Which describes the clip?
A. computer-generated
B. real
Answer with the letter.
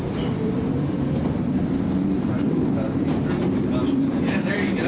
A